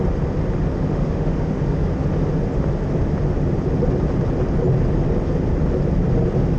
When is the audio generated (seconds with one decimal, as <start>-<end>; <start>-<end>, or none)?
0.9-1.6